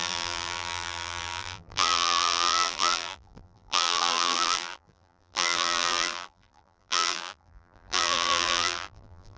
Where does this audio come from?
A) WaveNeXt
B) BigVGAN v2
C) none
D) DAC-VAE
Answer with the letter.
B